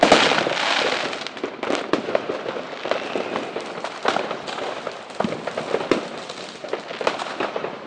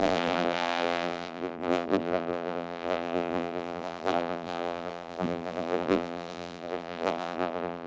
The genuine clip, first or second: first